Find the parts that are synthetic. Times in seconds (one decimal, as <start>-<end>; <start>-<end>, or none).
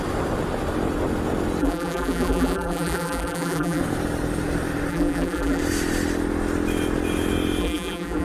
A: 1.6-3.8; 4.9-5.6; 7.6-8.2